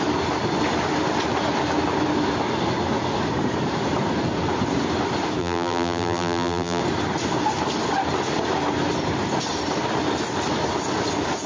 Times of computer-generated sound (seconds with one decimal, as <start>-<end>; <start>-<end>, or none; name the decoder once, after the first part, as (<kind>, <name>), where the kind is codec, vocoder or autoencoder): 5.4-6.8 (vocoder, BigVGAN v2)